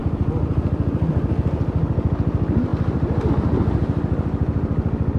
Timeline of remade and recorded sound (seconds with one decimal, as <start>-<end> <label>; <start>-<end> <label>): 0.0-5.2 recorded